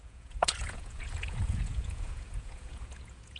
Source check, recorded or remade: remade